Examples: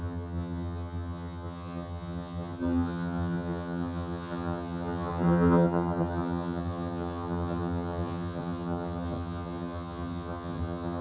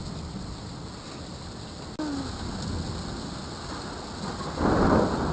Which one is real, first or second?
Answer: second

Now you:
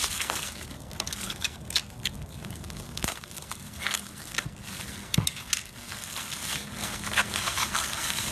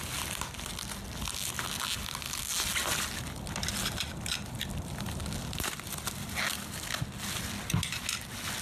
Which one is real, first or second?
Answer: second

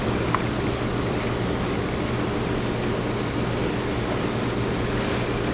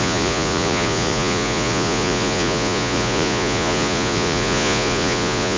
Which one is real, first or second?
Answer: first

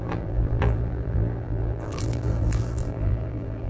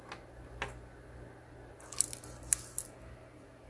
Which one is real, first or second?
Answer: second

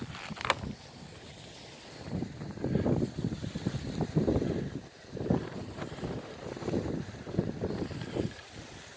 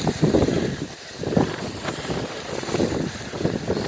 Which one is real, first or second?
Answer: first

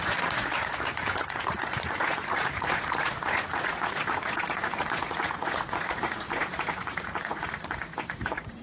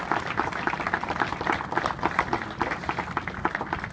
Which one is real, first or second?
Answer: second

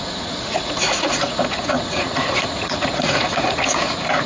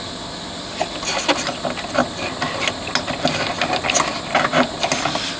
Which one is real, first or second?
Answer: second